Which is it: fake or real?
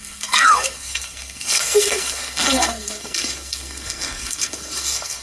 fake